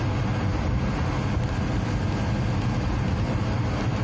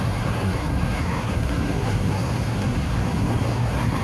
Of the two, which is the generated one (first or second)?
second